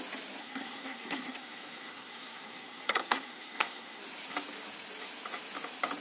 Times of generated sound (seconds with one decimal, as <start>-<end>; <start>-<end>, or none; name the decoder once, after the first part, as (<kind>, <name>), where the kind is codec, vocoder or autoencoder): 0.4-4.0 (codec, SNAC)